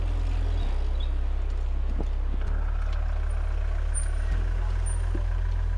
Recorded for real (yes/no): yes